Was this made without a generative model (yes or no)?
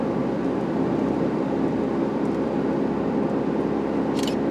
yes